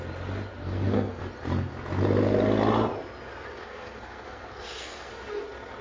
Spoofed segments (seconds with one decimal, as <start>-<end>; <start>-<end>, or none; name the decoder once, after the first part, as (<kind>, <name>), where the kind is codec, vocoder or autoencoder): 0.6-1.2 (codec, SNAC); 3.6-5.1